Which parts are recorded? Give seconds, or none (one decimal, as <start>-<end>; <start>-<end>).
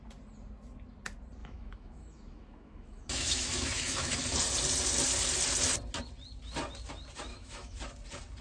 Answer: 0.0-1.4; 4.2-7.3; 7.8-8.4